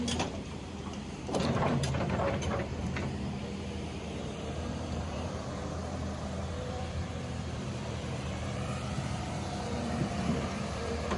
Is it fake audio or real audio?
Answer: fake